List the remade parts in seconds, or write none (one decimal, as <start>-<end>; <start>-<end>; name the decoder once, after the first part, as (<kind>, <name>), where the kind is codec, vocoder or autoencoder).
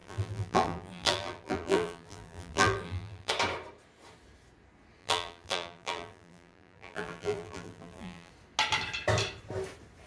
0.0-3.3 (vocoder, BigVGAN v2); 5.0-8.3